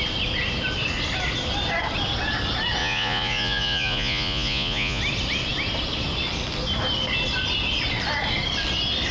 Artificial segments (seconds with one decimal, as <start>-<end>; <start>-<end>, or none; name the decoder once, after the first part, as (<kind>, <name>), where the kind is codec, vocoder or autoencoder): 2.8-5.0 (vocoder, Vocos)